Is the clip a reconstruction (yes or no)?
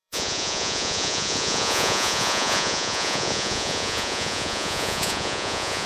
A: yes